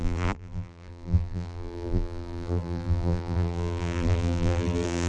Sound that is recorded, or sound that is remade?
remade